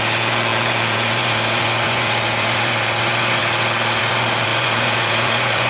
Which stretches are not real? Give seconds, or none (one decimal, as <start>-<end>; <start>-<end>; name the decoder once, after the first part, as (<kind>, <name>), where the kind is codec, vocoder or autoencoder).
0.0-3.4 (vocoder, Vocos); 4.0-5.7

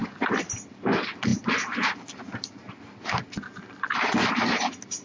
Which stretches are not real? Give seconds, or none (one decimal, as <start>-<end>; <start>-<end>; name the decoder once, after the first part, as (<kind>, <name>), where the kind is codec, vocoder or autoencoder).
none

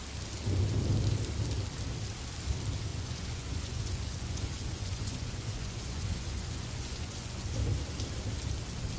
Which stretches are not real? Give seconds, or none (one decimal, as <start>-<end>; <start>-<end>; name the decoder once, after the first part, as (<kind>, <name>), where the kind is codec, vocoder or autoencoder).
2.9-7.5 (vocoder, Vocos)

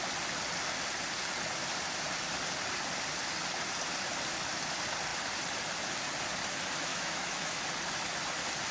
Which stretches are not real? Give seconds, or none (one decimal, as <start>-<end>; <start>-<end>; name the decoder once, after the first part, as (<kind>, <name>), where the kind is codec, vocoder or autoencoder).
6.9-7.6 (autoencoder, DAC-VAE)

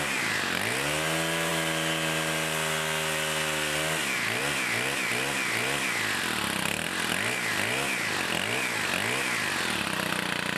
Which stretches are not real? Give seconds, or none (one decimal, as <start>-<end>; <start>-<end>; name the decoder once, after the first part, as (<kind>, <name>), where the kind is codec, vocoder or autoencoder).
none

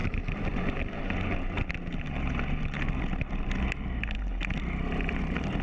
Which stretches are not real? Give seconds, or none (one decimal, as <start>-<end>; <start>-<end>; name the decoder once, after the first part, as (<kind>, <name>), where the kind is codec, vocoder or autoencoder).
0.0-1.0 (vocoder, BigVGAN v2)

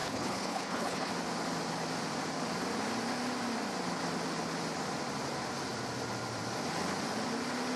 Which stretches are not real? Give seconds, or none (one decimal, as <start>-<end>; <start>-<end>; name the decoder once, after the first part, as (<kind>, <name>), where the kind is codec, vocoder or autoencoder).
0.0-1.1 (codec, HILCodec)